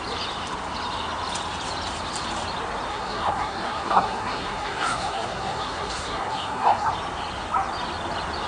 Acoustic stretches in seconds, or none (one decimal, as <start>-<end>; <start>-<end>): 0.0-2.9; 6.9-8.5